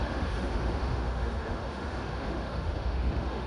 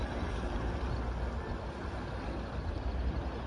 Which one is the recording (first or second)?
second